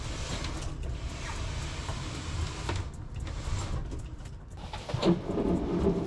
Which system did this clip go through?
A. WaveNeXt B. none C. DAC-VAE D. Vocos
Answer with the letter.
B